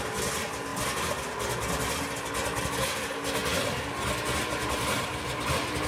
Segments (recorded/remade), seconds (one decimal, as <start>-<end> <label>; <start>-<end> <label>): 0.0-5.9 recorded